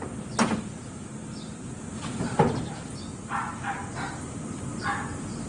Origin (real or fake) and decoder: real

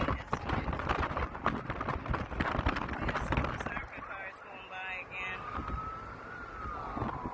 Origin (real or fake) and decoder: real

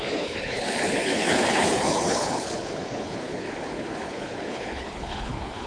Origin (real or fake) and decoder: fake, codec, HILCodec